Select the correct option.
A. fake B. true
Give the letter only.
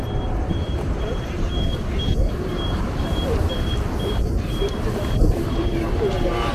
A